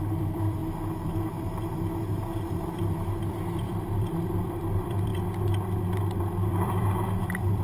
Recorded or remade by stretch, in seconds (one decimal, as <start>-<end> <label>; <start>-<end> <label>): 0.0-0.6 remade; 0.6-2.5 recorded; 2.5-5.1 remade; 5.1-6.2 recorded; 6.2-7.6 remade